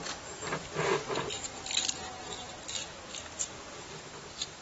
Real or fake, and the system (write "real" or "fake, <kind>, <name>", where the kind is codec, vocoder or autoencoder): real